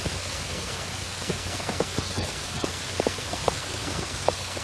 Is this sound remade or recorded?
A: remade